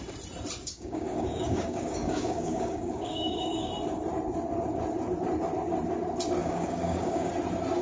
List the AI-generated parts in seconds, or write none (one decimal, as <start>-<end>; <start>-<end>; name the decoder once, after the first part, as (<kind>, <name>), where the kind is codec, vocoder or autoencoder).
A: 0.6-3.7 (codec, DAC); 6.4-7.3

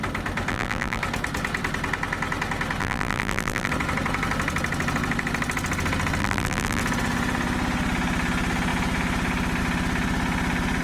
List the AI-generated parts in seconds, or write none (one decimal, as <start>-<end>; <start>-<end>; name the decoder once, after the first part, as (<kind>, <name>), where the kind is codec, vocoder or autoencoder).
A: 0.5-1.0 (vocoder, BigVGAN v2); 2.8-3.7; 6.2-6.8

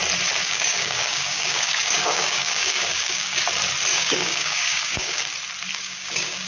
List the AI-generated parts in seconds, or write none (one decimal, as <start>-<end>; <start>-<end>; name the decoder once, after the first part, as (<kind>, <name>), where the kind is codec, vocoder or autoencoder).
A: 0.4-3.4 (codec, DAC); 3.9-5.2; 5.7-6.5

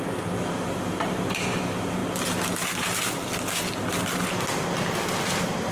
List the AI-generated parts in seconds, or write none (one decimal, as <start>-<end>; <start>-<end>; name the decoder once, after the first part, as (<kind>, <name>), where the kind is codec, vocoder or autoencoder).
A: none

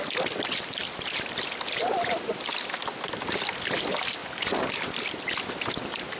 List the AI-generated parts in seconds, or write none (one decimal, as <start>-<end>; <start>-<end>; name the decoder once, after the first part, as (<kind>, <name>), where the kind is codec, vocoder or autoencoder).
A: 4.2-4.9 (vocoder, BigVGAN v2)